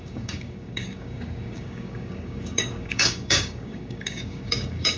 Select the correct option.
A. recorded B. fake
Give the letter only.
B